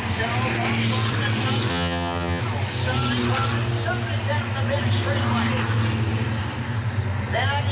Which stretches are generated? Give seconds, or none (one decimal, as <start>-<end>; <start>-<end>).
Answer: 1.7-2.4